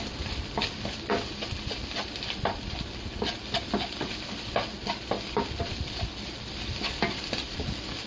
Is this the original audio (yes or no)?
yes